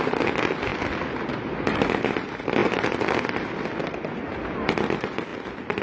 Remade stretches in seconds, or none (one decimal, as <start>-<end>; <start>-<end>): none